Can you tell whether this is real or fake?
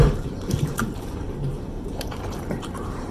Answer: fake